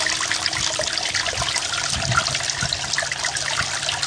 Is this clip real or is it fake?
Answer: real